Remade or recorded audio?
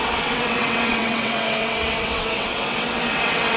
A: remade